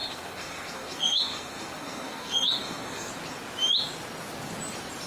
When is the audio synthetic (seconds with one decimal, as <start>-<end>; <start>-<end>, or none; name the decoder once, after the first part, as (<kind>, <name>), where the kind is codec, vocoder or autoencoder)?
0.0-3.1 (codec, SNAC)

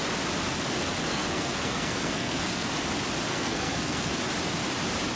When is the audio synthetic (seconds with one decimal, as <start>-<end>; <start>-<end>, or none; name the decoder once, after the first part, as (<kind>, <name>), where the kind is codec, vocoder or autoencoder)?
1.1-2.7 (codec, SNAC); 3.3-4.1

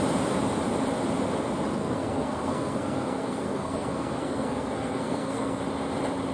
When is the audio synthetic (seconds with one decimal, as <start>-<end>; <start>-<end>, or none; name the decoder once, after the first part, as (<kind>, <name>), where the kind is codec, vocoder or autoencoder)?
1.8-5.6 (codec, SNAC)

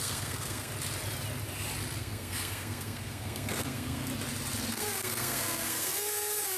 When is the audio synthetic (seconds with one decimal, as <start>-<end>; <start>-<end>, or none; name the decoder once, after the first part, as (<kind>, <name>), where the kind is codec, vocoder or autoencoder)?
0.0-0.7 (codec, SNAC); 2.0-4.1; 4.7-6.6

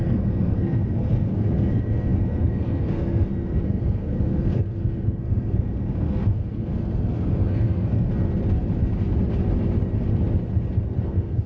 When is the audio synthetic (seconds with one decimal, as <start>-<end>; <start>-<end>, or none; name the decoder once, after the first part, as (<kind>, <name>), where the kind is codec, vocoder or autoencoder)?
0.0-8.1 (codec, SNAC); 11.0-11.5

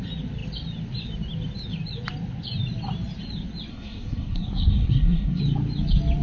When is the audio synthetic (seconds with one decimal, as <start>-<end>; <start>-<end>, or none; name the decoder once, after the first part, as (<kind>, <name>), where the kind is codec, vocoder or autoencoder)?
3.7-5.4 (codec, SNAC)

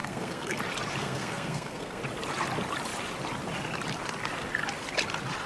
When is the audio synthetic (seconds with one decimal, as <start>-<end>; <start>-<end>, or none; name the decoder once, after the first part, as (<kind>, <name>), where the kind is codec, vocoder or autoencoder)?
0.0-0.6 (codec, SNAC); 1.0-2.0